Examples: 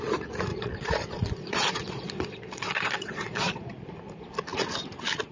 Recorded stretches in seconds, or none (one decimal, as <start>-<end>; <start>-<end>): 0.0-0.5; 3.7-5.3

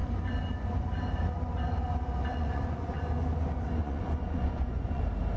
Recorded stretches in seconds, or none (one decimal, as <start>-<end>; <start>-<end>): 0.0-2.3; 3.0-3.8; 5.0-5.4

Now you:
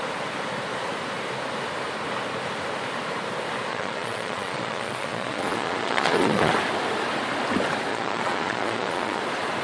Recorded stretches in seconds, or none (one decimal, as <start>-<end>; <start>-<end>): 0.0-3.7; 6.5-7.9; 9.2-9.6